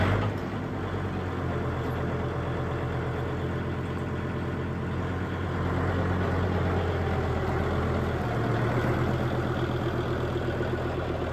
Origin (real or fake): real